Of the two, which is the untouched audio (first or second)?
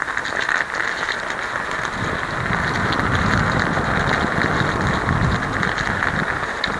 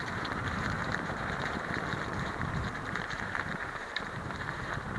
first